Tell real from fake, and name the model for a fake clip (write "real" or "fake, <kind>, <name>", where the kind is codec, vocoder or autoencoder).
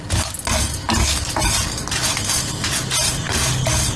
real